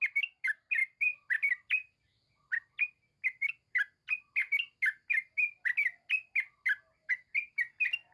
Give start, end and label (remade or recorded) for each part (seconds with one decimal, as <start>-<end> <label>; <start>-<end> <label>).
0.0-8.1 recorded